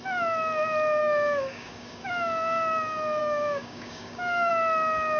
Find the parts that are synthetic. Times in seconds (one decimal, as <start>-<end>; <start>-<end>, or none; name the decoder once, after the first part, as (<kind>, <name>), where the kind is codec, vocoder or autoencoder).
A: 1.0-2.1 (codec, DAC); 3.2-4.5